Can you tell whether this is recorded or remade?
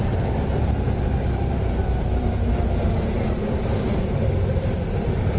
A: remade